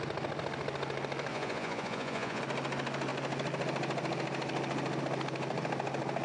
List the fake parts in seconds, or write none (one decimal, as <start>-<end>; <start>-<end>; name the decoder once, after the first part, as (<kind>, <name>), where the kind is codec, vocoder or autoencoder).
1.3-2.4 (vocoder, Vocos)